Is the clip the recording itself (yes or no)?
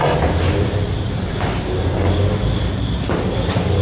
yes